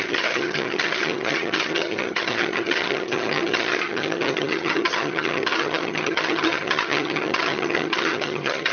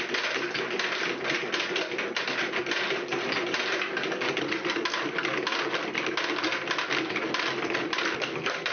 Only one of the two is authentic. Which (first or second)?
second